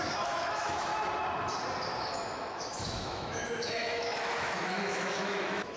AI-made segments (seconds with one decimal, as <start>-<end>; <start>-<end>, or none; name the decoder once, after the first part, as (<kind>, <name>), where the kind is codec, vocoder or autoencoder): 0.0-0.9 (autoencoder, DAC-VAE); 1.9-5.8